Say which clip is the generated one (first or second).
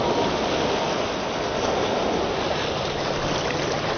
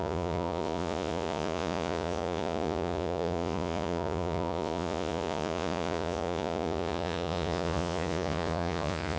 second